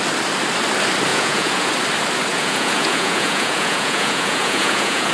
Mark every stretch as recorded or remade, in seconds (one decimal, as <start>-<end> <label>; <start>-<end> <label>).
0.0-1.1 recorded; 1.1-1.7 remade; 1.7-2.3 recorded; 2.3-5.1 remade